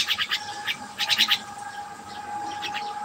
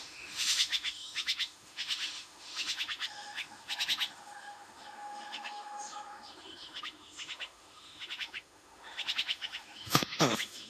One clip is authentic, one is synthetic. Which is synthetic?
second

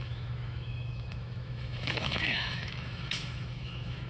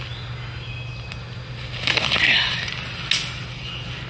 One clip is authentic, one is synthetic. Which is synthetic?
first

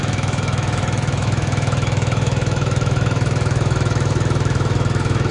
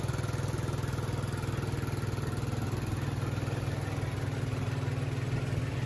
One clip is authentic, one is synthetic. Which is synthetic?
first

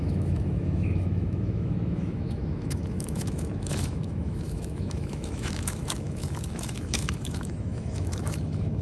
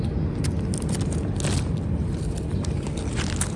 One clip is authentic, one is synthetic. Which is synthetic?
first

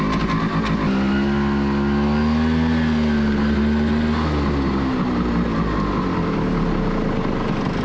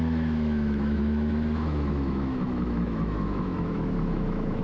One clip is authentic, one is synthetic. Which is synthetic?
second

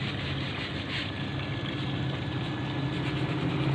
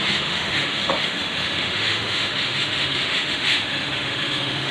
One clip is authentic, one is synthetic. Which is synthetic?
second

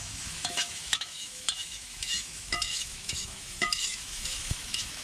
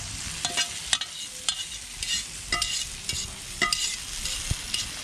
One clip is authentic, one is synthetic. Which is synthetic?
first